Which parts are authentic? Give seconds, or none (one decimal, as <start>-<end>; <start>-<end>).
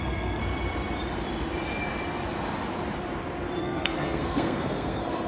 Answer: 0.4-3.6